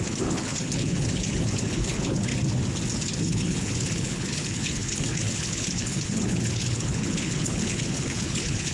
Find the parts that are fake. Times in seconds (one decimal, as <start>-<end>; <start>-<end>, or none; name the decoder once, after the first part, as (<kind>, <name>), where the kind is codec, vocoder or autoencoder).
0.0-2.3 (codec, HILCodec); 3.2-8.7